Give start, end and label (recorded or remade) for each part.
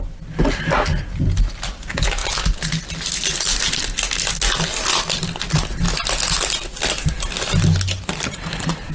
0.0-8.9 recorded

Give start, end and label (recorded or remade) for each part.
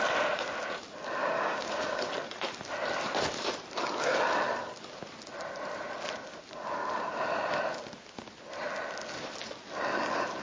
0.0-1.2 recorded; 1.2-1.7 remade; 1.7-10.4 recorded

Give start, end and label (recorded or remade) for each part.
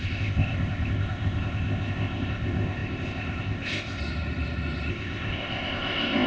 0.0-4.0 remade; 4.0-4.9 recorded; 4.9-6.3 remade